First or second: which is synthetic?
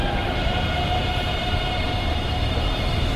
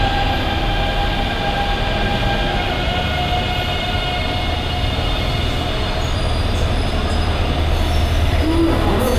first